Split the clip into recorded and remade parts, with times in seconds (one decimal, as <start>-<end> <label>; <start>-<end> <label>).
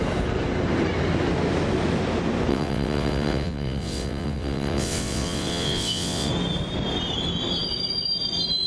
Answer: 0.0-2.5 recorded; 2.5-6.3 remade; 6.3-8.7 recorded